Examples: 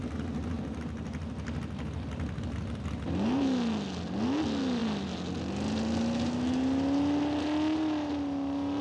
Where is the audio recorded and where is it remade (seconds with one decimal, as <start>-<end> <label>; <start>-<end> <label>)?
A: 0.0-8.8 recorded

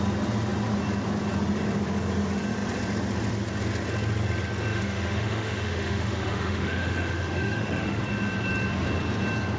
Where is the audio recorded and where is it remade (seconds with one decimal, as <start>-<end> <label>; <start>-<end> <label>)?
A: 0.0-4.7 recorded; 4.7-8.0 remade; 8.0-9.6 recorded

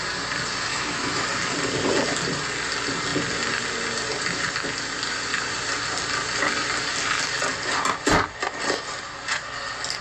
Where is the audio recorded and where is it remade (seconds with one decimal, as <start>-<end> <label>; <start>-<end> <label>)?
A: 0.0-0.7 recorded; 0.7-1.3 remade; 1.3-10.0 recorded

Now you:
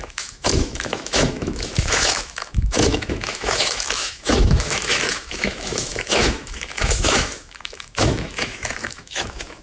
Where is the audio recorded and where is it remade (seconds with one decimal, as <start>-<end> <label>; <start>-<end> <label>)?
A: 0.0-9.6 remade

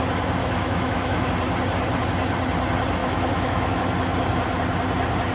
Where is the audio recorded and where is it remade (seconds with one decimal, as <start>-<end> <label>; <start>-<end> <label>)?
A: 0.0-0.4 recorded; 0.4-1.3 remade; 1.3-3.0 recorded; 3.0-3.8 remade; 3.8-5.3 recorded